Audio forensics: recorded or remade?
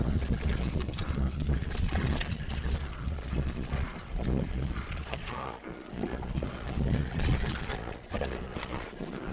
remade